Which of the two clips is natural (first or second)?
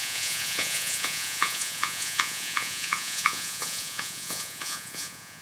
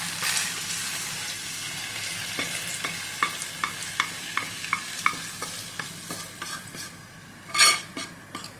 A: second